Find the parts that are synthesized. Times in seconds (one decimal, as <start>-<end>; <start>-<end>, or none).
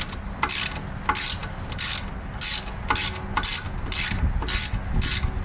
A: none